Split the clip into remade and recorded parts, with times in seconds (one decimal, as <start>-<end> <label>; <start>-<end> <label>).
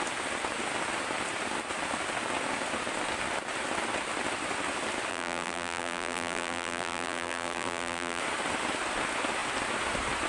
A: 0.0-5.1 recorded; 5.1-8.2 remade; 8.2-10.3 recorded